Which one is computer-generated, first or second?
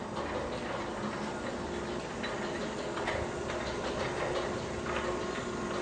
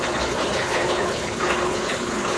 second